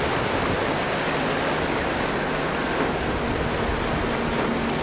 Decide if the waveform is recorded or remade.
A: recorded